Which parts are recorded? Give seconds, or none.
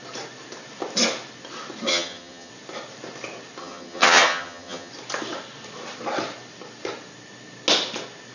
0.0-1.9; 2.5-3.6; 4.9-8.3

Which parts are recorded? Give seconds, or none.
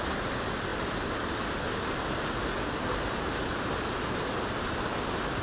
0.0-5.4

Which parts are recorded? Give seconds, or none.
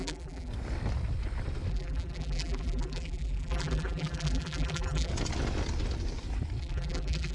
0.5-1.7; 5.1-6.6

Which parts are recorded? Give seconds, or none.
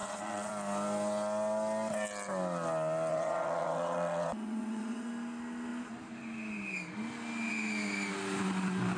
0.5-3.1; 5.1-9.0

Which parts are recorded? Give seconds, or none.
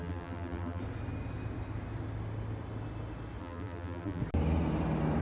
0.8-3.4; 4.2-5.2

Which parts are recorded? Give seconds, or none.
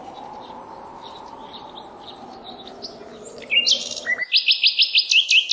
0.0-5.5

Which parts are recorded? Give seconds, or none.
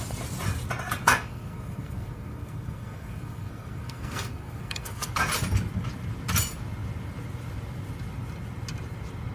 0.0-1.1; 5.1-9.3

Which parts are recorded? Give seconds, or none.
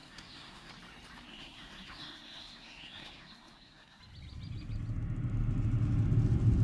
0.7-1.3; 4.0-6.6